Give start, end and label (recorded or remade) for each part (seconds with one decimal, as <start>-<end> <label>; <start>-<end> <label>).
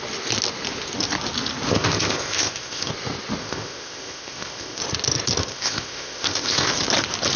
0.0-1.7 recorded; 1.7-2.9 remade; 2.9-3.4 recorded; 3.4-4.8 remade; 4.8-5.4 recorded; 5.4-6.7 remade; 6.7-7.4 recorded